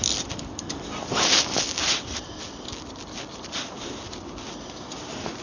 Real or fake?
real